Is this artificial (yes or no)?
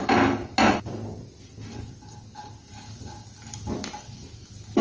no